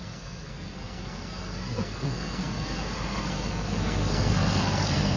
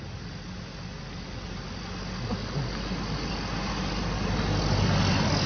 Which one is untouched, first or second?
second